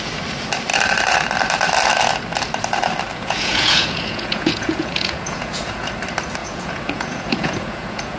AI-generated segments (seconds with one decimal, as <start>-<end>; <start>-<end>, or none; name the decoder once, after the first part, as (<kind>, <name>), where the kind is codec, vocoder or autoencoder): 3.1-5.9 (vocoder, Vocos); 6.4-8.2